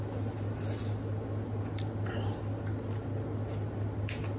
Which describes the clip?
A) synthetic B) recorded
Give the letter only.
B